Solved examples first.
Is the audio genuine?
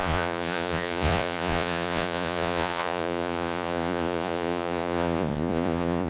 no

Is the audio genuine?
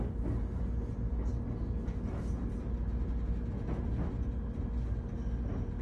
yes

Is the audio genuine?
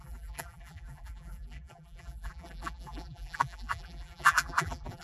no